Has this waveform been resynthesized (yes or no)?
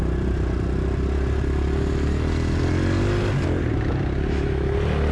no